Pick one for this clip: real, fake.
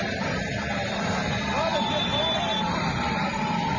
fake